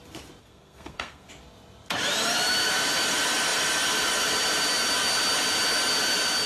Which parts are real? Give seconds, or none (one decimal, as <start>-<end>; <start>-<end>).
0.0-0.4; 1.3-6.5